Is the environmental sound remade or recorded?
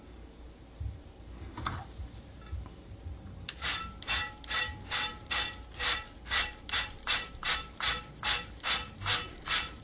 remade